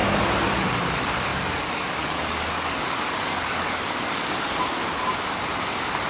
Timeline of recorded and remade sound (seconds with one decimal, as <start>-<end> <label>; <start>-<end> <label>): 0.0-1.3 recorded; 1.3-4.6 remade; 4.6-6.1 recorded